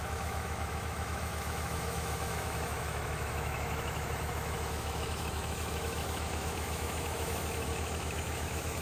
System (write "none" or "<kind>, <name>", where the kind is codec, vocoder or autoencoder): autoencoder, DAC-VAE